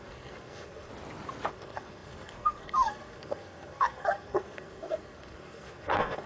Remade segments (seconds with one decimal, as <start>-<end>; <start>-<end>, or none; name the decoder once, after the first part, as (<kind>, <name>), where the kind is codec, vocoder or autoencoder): 0.0-0.9 (codec, SNAC); 1.5-6.3

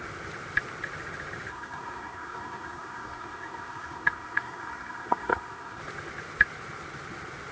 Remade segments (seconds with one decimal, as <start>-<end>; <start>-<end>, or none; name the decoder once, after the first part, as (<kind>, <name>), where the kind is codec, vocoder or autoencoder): 1.5-5.8 (codec, SNAC)

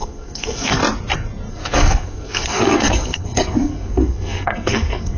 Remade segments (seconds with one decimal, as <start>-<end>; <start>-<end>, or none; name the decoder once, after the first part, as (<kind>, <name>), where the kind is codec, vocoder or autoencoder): 0.0-0.8 (codec, SNAC); 1.5-5.2

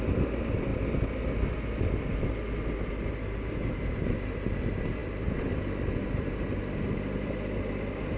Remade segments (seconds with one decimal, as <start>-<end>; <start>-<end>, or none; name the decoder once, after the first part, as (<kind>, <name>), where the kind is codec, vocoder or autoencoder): none